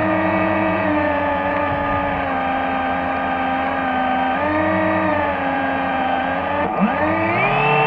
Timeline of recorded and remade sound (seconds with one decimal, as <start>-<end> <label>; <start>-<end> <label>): 0.0-1.7 remade; 1.7-5.1 recorded; 5.1-7.0 remade; 7.0-7.9 recorded